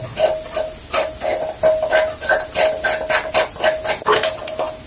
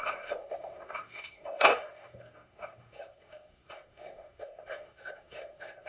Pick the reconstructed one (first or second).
second